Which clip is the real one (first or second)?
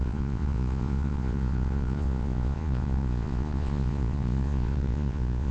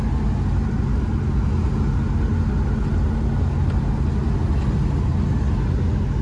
second